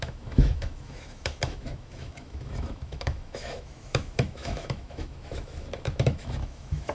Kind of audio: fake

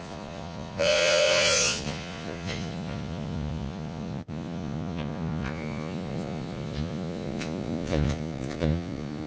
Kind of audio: fake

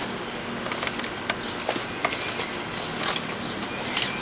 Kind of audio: real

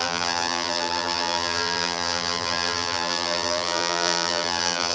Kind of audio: fake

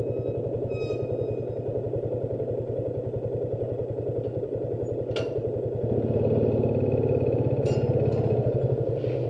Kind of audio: real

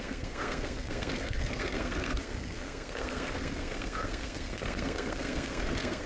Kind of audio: fake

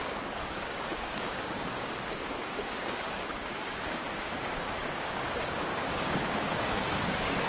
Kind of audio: fake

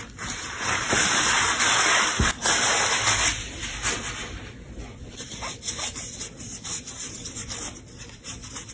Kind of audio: fake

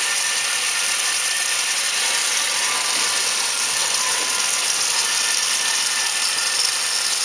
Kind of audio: real